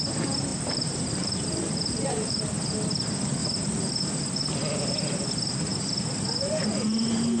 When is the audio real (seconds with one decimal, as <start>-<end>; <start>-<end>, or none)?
0.0-0.5; 2.4-3.4; 4.2-7.4